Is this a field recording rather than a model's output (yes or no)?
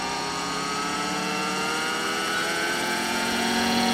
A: no